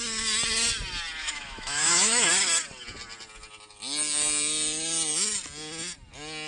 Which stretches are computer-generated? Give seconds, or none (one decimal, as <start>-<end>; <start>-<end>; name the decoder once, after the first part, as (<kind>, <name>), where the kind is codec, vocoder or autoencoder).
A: 1.2-2.3 (autoencoder, DAC-VAE)